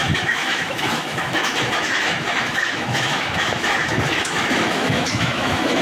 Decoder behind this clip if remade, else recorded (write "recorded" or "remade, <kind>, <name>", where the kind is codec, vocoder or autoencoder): remade, autoencoder, DAC-VAE